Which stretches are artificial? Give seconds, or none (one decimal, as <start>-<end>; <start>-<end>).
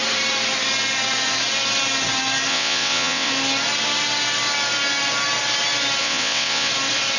2.5-3.3; 6.0-6.7